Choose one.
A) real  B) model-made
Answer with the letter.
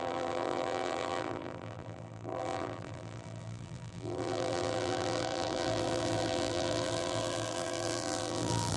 B